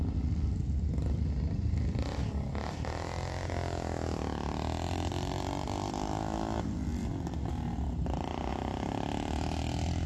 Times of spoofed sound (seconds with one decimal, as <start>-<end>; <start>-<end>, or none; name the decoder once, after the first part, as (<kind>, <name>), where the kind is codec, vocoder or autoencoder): none